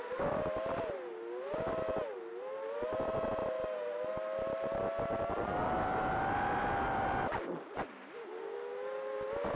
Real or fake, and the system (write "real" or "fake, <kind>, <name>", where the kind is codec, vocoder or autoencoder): real